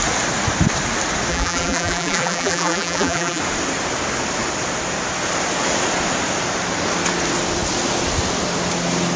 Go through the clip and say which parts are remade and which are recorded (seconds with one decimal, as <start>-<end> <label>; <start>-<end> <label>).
0.0-1.3 recorded; 1.3-3.4 remade; 3.4-9.2 recorded